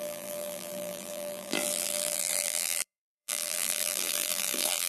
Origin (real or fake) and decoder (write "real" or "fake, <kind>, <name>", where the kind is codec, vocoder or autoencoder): fake, vocoder, BigVGAN v2